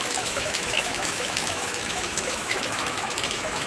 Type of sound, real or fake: fake